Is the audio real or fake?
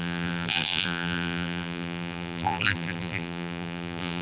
fake